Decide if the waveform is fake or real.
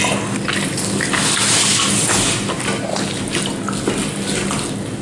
real